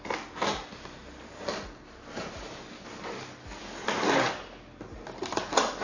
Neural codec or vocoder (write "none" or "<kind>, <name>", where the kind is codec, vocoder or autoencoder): none